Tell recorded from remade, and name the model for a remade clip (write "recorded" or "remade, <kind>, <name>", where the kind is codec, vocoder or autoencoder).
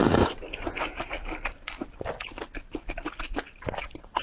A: recorded